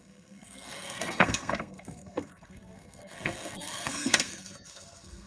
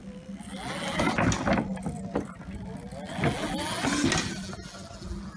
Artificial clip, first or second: first